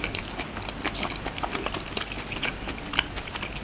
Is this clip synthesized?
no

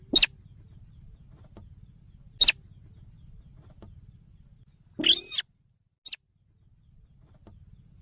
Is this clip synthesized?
no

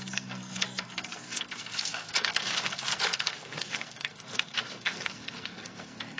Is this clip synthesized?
yes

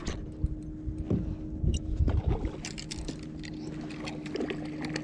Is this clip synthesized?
no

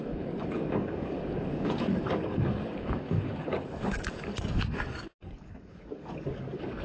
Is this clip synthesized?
yes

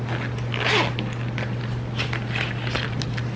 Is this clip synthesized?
no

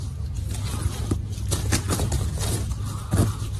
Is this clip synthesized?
no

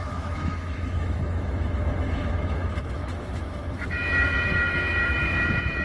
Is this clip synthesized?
yes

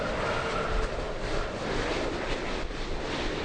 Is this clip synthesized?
no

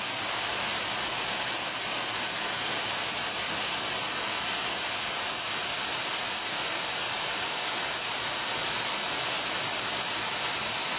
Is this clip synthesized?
no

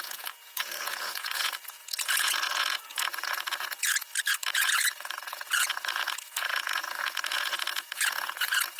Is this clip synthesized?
yes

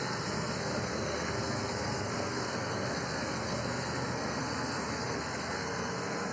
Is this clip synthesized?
yes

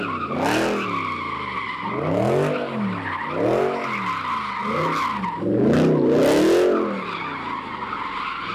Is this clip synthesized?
no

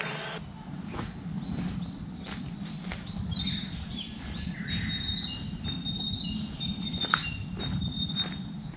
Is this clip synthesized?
no